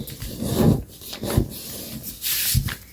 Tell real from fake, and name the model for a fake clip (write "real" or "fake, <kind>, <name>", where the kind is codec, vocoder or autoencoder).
real